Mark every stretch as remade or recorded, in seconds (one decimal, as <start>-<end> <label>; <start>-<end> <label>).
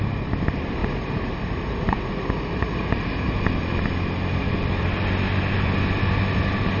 0.0-0.8 recorded; 0.8-3.4 remade; 3.4-6.8 recorded